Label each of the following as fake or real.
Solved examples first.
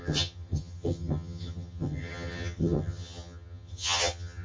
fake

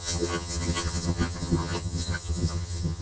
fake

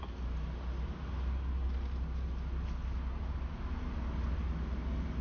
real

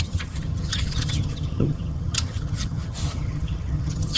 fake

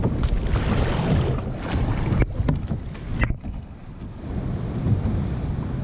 real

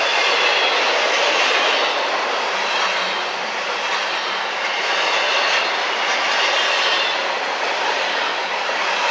real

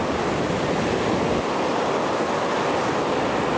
real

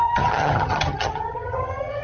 fake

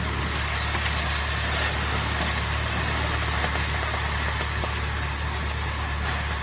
real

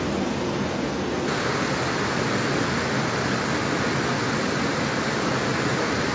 real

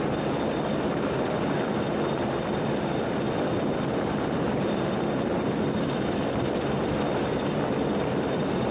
real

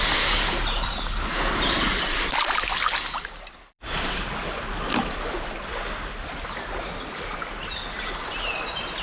real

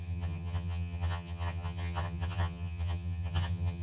fake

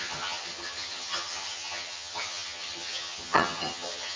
fake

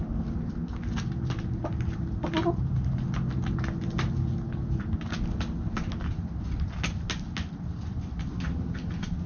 real